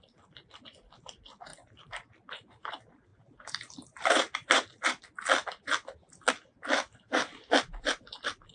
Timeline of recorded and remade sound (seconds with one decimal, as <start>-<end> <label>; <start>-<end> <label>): 0.0-1.5 recorded; 1.5-2.7 remade; 2.7-3.1 recorded; 3.1-4.8 remade; 4.8-8.5 recorded